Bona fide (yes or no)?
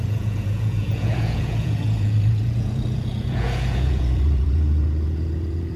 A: no